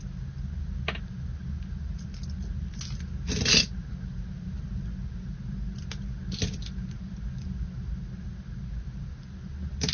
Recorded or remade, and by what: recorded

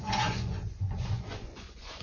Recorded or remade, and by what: remade, vocoder, Vocos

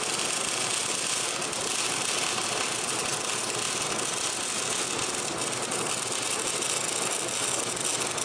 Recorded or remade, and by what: recorded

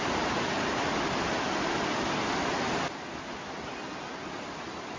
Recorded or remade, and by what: recorded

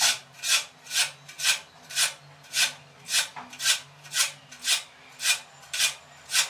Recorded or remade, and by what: recorded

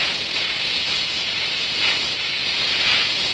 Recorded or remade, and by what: remade, vocoder, Vocos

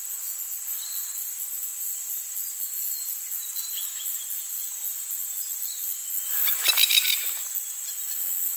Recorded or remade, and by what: recorded